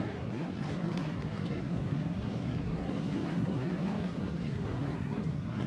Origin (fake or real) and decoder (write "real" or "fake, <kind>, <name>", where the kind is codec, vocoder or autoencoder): fake, codec, SNAC